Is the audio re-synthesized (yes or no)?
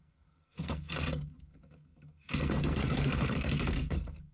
yes